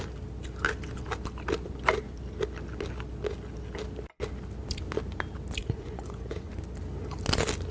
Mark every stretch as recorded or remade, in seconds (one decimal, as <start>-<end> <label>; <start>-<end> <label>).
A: 0.0-5.6 recorded; 5.6-6.5 remade; 6.5-7.7 recorded